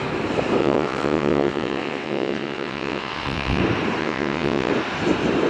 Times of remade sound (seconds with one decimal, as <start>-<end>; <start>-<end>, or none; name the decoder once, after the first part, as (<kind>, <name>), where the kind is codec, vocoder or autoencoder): 0.6-3.6 (vocoder, WaveNeXt); 4.0-4.7